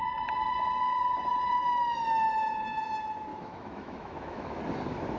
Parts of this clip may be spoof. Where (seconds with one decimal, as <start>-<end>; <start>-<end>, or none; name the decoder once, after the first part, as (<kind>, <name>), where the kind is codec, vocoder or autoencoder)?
3.3-4.6 (autoencoder, DAC-VAE)